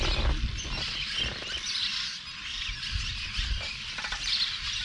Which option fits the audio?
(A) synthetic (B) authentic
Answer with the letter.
B